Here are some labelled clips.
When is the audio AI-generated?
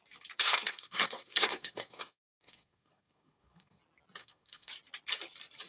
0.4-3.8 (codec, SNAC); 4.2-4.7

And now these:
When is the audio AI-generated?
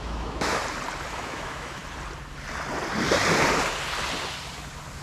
0.0-0.6 (autoencoder, DAC-VAE); 1.1-1.8